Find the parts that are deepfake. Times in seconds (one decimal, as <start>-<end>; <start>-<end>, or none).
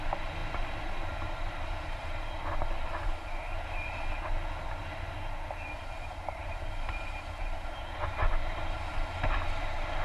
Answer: none